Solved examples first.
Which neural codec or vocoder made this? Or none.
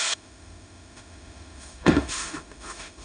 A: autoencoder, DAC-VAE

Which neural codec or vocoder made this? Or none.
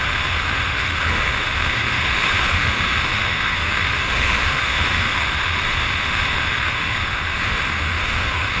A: autoencoder, DAC-VAE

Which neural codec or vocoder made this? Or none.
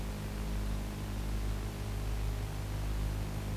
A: none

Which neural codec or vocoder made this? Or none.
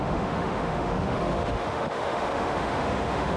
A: autoencoder, DAC-VAE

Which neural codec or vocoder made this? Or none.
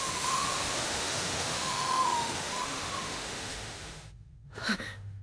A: autoencoder, DAC-VAE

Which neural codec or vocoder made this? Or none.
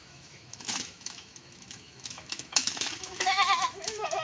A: autoencoder, DAC-VAE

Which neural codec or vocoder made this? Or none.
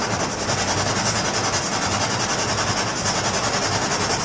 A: none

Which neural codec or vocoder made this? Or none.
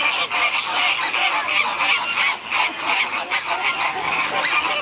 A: none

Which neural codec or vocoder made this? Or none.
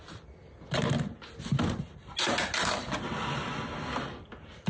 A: none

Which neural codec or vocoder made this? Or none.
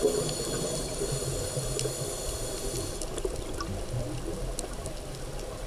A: none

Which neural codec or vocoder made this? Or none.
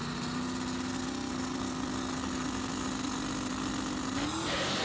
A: none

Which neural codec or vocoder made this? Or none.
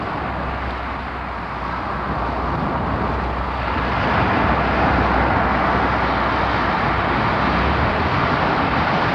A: none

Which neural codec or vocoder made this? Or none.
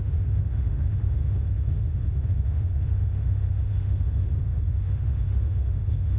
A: autoencoder, DAC-VAE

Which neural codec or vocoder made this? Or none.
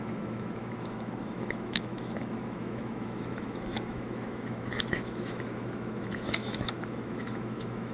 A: autoencoder, DAC-VAE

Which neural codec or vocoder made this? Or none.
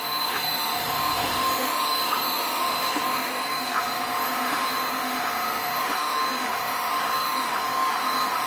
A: autoencoder, DAC-VAE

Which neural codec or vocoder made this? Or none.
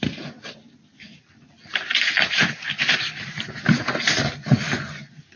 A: none